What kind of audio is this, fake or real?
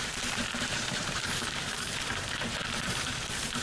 fake